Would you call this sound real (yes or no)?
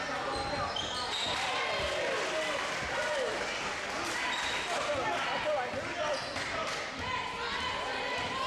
yes